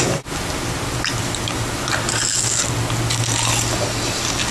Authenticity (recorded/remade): recorded